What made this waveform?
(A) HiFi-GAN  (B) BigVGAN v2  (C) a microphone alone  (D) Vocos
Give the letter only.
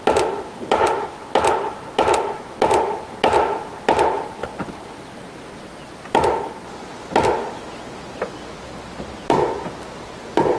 C